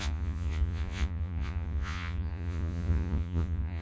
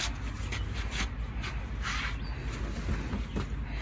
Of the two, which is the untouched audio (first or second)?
second